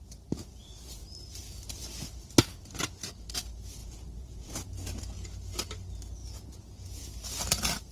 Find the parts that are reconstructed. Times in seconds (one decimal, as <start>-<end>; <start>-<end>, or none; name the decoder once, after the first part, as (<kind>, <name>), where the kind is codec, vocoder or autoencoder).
3.8-5.0 (vocoder, Vocos); 6.2-7.0

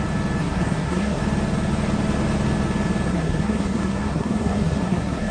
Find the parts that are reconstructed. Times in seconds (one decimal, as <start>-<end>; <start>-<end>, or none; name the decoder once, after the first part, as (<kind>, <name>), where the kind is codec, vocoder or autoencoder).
0.4-1.2 (codec, SNAC); 3.1-5.3

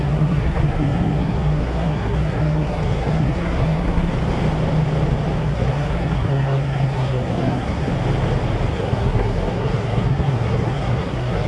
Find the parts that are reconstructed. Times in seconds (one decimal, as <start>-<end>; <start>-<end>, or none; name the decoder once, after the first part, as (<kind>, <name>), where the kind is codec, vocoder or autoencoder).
0.0-4.1 (codec, SNAC); 5.4-7.9; 8.7-11.5

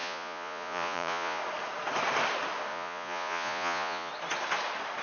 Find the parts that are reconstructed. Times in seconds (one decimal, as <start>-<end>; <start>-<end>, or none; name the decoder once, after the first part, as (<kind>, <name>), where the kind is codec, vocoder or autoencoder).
0.0-1.4 (vocoder, Vocos); 2.7-4.1

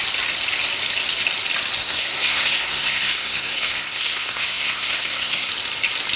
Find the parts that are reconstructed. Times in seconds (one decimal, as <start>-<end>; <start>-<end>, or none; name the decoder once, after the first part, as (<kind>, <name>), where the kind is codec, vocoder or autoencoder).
1.8-5.5 (codec, SNAC)

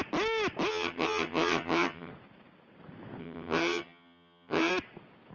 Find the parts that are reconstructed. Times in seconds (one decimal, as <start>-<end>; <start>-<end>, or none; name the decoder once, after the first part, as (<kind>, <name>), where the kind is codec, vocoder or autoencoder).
0.7-2.1 (vocoder, HiFi-GAN); 3.2-4.7

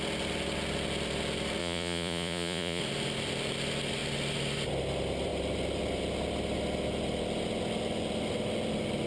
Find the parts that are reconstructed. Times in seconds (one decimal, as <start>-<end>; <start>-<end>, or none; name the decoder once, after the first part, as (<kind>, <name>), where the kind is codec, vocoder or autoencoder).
1.6-2.8 (vocoder, Vocos)